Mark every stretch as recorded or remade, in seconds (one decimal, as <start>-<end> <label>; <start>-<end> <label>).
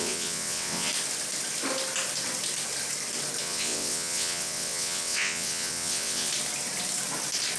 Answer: 0.0-0.9 remade; 0.9-3.4 recorded; 3.4-6.3 remade; 6.3-7.6 recorded